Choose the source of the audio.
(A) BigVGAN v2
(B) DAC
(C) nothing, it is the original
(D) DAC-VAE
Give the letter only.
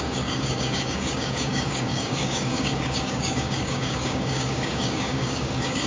B